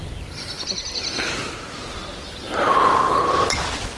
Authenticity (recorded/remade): recorded